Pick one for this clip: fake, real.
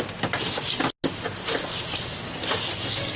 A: real